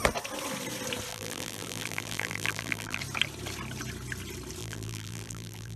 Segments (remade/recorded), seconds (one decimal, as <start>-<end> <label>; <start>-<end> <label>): 0.0-1.1 recorded; 1.1-3.0 remade; 3.0-4.6 recorded; 4.6-5.8 remade